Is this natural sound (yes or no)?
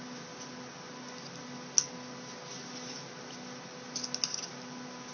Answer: yes